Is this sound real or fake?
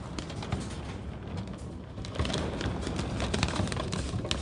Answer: real